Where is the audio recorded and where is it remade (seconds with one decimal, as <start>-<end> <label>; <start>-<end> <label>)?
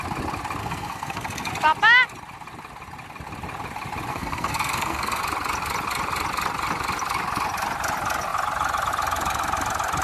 0.0-0.6 recorded; 0.6-1.5 remade; 1.5-4.1 recorded; 4.1-5.2 remade; 5.2-10.0 recorded